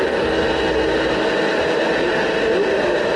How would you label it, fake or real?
real